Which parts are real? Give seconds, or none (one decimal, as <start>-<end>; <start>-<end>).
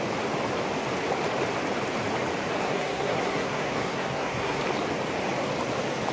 0.0-2.6; 4.6-6.1